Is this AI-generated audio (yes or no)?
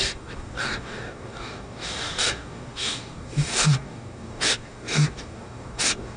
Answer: yes